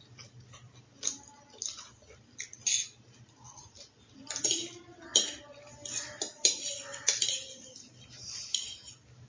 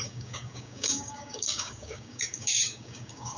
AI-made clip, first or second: second